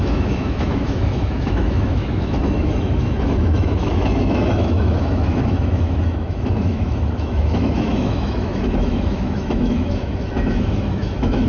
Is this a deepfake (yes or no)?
yes